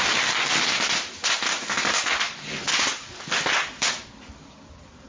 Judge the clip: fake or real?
real